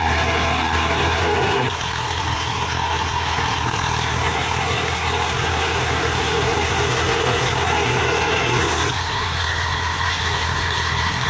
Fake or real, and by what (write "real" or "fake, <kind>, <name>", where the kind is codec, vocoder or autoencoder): fake, codec, SNAC